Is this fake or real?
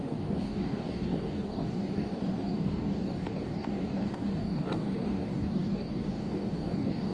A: fake